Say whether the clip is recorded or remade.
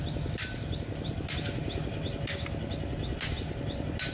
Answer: recorded